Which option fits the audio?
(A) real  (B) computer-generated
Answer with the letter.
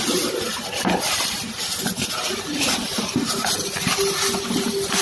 A